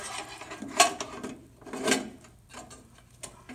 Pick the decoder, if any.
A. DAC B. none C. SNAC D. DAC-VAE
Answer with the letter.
B